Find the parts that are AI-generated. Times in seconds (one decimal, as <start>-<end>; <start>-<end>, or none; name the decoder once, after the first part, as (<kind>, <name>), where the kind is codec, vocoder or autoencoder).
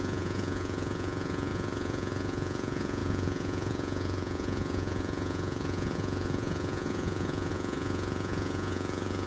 0.0-9.3 (vocoder, Vocos)